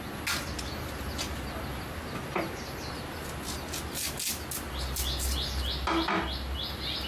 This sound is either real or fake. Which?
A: real